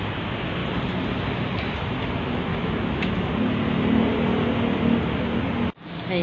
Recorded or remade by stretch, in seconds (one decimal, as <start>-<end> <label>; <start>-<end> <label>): 0.0-2.5 recorded; 2.5-3.3 remade; 3.3-6.2 recorded